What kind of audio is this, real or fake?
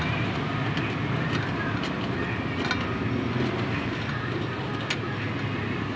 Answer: real